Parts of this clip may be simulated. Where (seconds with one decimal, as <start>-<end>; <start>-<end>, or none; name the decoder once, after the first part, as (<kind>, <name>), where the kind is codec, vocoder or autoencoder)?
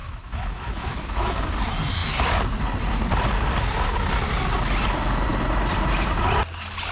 0.0-1.4 (autoencoder, DAC-VAE)